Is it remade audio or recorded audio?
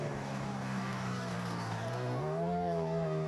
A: remade